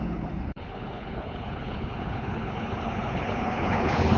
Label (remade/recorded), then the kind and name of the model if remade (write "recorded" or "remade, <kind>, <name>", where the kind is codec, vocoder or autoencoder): remade, codec, HILCodec